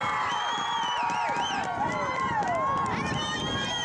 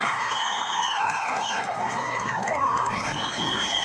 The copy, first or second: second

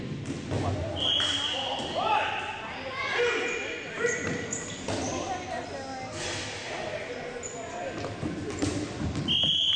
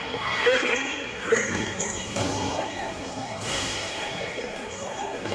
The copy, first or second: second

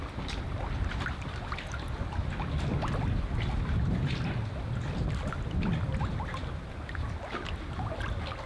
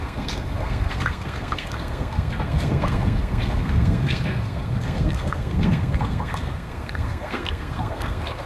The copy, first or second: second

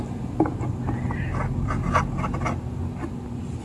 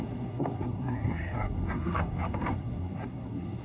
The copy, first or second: second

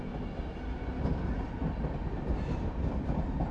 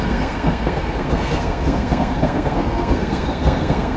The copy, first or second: second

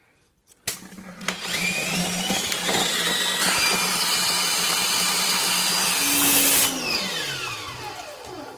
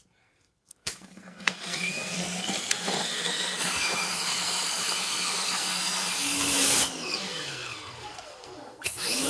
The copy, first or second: second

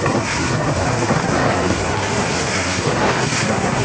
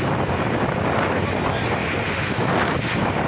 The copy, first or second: first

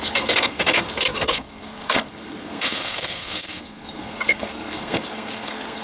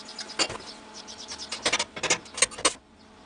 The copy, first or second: first